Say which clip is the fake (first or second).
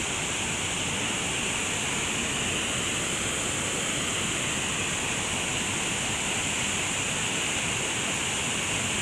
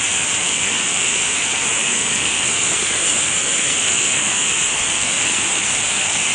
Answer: second